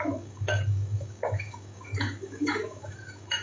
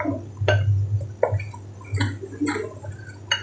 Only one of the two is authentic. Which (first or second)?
second